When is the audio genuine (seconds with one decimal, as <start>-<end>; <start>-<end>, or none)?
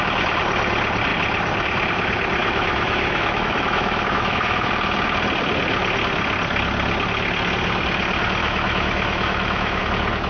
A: 0.0-2.4; 4.7-8.4; 9.8-10.3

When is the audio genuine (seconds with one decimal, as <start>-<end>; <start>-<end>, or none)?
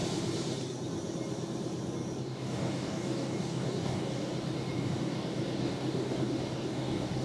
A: 0.0-2.2; 4.3-4.8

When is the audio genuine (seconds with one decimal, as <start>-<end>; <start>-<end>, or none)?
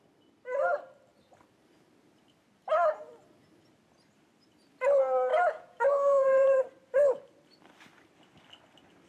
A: 0.0-5.3; 6.6-9.1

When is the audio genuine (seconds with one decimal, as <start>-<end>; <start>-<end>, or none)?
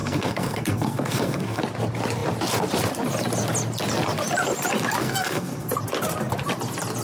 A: 1.6-5.0; 5.7-7.0